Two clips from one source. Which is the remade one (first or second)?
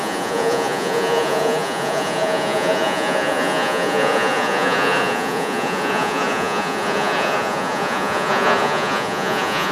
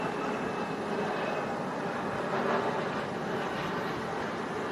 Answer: first